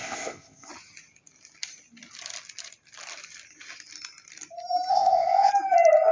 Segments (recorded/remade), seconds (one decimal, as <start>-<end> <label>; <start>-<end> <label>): 0.0-0.7 remade; 0.7-4.9 recorded; 4.9-5.5 remade; 5.5-6.1 recorded